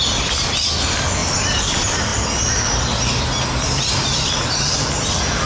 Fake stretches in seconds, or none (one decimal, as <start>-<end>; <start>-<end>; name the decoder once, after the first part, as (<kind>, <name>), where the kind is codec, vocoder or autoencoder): 1.2-1.7 (vocoder, BigVGAN v2)